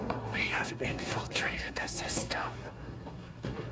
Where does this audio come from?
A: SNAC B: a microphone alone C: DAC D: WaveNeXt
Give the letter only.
A